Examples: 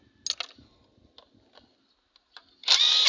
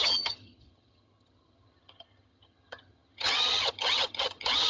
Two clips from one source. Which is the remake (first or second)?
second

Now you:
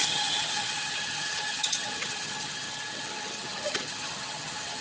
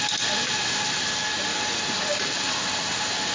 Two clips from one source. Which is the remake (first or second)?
first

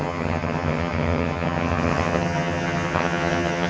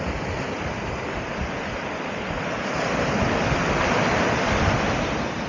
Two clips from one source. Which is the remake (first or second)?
first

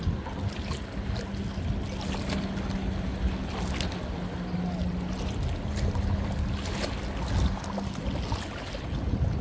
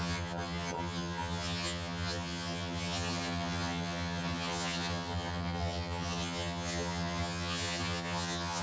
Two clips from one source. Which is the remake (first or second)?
second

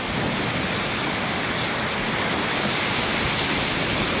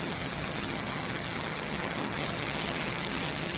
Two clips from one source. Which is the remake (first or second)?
second